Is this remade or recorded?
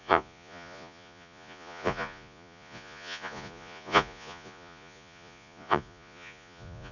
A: remade